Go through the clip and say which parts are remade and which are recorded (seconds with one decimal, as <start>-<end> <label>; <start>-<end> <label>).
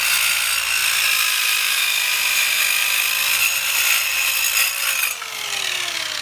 0.0-0.8 recorded; 0.8-3.4 remade; 3.4-4.1 recorded; 4.1-4.8 remade; 4.8-6.2 recorded